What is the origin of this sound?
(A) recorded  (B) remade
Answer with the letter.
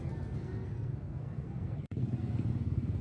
B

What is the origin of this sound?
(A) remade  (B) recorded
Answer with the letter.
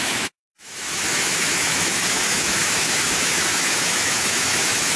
A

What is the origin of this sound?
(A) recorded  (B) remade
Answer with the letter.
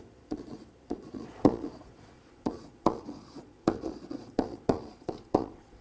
B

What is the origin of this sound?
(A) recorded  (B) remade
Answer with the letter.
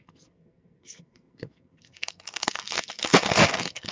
B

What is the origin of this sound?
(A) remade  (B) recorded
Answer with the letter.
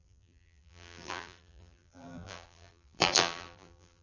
A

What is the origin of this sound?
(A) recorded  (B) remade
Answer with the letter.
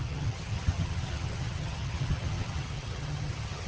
B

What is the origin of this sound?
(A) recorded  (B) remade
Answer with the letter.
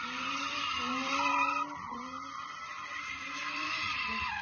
B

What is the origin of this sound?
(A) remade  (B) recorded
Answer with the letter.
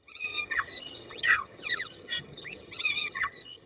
A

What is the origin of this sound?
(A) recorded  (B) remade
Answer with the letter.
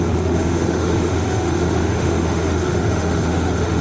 B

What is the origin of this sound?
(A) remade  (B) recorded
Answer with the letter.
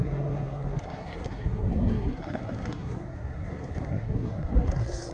A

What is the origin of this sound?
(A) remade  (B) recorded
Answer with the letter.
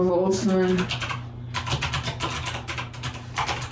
B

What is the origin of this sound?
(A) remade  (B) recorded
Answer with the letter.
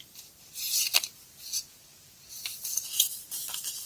A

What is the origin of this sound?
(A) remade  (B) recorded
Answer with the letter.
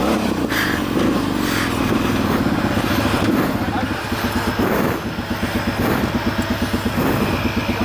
B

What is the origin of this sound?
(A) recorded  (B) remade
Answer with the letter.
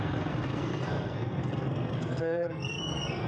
B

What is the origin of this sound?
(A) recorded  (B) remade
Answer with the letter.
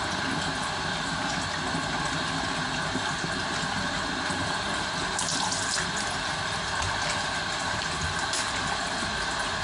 A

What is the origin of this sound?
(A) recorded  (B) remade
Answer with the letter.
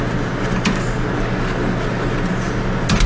A